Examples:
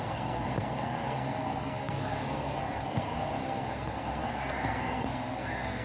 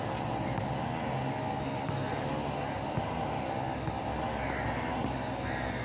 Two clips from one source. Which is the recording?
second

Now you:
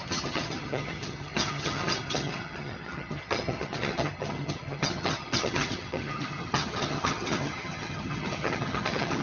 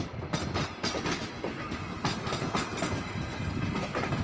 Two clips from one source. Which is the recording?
second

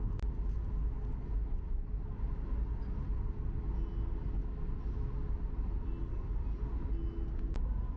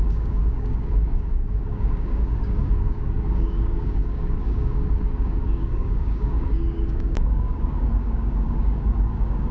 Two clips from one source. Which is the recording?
first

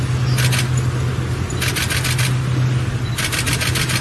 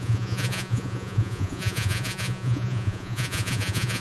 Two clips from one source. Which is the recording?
first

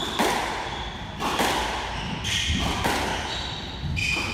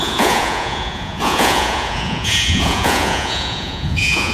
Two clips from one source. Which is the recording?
first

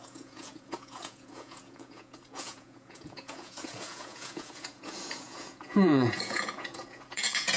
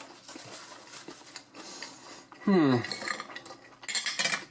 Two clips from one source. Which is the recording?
second